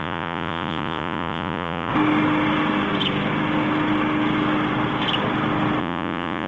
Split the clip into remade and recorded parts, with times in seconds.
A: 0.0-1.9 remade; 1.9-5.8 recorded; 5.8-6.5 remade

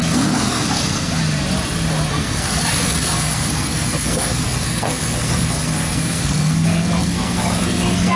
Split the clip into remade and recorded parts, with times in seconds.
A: 0.0-1.2 remade; 1.2-2.1 recorded; 2.1-8.2 remade

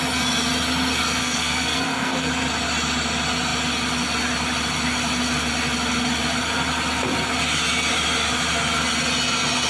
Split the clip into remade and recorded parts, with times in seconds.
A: 0.0-1.2 recorded; 1.2-2.3 remade; 2.3-9.7 recorded

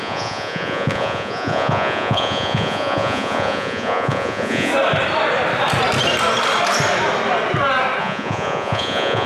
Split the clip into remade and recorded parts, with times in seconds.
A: 0.0-4.7 remade; 4.7-8.0 recorded; 8.0-9.3 remade

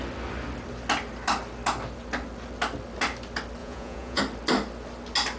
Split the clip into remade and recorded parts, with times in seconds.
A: 0.0-3.6 recorded; 3.6-4.2 remade; 4.2-5.4 recorded

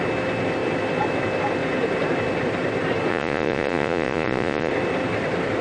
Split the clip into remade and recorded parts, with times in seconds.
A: 0.0-3.1 recorded; 3.1-4.7 remade; 4.7-5.6 recorded

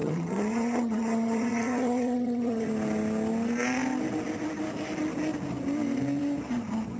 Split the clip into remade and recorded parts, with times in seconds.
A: 0.0-2.7 remade; 2.7-7.0 recorded